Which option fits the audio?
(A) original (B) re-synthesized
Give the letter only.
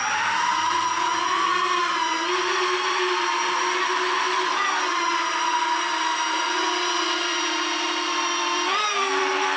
A